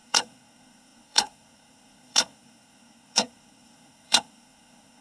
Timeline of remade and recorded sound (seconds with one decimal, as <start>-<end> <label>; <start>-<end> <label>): 0.0-5.0 remade